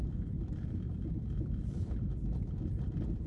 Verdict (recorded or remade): remade